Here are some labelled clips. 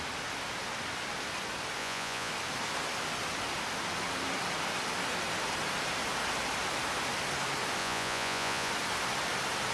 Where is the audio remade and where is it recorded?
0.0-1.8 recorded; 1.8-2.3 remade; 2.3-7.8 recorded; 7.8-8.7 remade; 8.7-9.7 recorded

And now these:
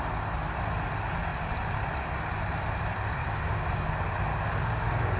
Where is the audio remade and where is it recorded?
0.0-3.2 recorded; 3.2-3.9 remade; 3.9-4.3 recorded; 4.3-5.2 remade

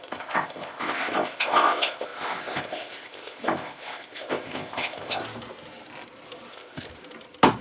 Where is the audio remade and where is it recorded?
0.0-5.2 remade; 5.2-6.5 recorded; 6.5-6.9 remade; 6.9-7.6 recorded

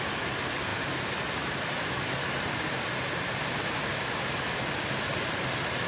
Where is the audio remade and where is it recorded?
0.0-5.9 recorded

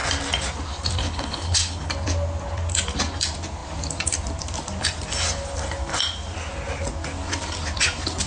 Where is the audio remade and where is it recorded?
0.0-1.0 recorded; 1.0-1.9 remade; 1.9-8.3 recorded

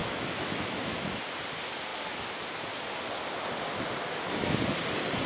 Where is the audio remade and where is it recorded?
0.0-1.2 remade; 1.2-5.3 recorded